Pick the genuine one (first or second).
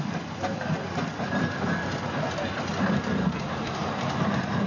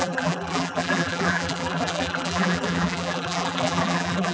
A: first